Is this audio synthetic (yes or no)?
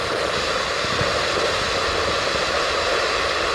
no